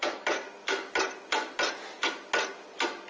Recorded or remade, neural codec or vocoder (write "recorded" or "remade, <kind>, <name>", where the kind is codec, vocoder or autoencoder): recorded